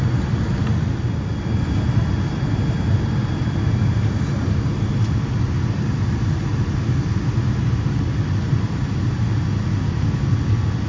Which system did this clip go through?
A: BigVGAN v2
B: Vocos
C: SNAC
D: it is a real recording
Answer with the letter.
D